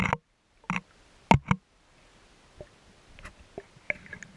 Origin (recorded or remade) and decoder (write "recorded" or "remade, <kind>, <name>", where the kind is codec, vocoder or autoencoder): recorded